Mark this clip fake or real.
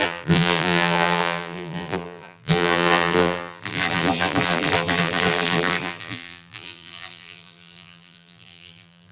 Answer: fake